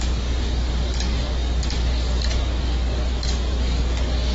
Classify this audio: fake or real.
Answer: fake